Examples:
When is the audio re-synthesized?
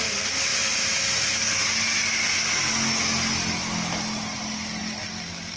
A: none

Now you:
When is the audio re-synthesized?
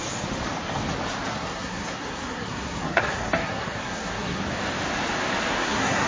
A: 1.3-4.4 (codec, SNAC); 5.5-6.1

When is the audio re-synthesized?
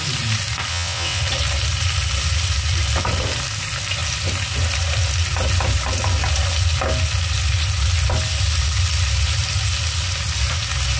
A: 0.7-1.2 (vocoder, WaveNeXt)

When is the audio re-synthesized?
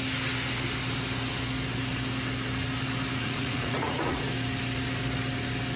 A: 3.2-4.2 (vocoder, Vocos)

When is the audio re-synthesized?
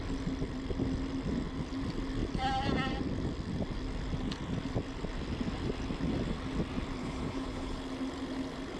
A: 7.0-7.8 (codec, HILCodec)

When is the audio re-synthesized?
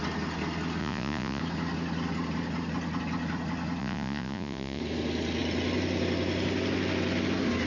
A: 0.8-1.4 (vocoder, Vocos); 3.8-4.8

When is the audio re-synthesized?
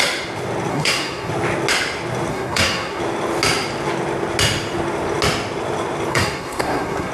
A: 0.7-1.3 (codec, SNAC); 2.3-3.0; 6.1-7.1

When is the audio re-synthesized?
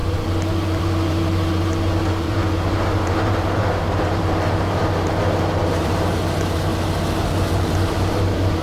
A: 0.0-6.7 (vocoder, BigVGAN v2); 7.5-8.6